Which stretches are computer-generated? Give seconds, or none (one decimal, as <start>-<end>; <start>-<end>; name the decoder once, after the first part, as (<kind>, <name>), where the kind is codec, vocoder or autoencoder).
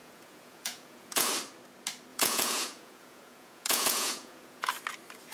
0.0-1.3 (vocoder, Vocos); 2.1-4.7